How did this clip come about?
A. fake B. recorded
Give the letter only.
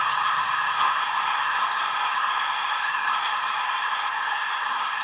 A